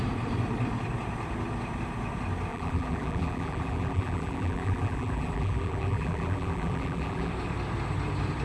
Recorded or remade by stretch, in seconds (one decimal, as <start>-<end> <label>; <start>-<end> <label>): 0.0-2.5 recorded; 2.5-7.3 remade; 7.3-8.4 recorded